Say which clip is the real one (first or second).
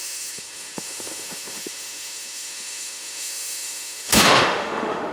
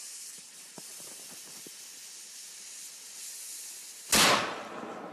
second